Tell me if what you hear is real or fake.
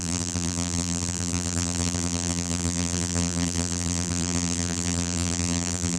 fake